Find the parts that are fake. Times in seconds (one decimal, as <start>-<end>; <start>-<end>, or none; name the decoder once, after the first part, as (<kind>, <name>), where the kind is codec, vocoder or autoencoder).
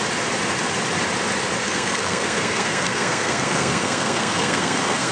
1.6-5.1 (codec, SNAC)